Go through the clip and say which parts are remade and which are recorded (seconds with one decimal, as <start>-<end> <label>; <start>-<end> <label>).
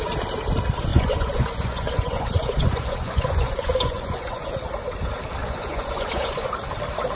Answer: 0.0-0.9 recorded; 0.9-4.5 remade; 4.5-5.4 recorded; 5.4-6.5 remade; 6.5-7.2 recorded